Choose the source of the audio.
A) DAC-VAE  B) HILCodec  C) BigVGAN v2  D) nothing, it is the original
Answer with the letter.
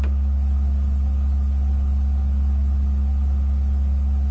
D